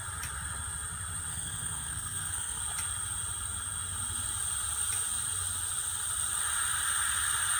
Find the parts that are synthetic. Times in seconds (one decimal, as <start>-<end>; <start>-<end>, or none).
1.3-2.6